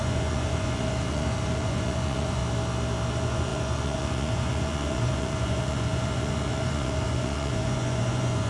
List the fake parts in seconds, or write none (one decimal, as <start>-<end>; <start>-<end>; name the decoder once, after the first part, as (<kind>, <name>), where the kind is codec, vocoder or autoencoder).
0.0-2.4 (vocoder, Vocos); 3.1-8.5